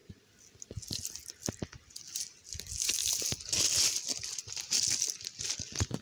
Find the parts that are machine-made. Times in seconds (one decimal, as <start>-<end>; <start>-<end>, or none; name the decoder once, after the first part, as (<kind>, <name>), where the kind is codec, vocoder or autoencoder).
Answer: none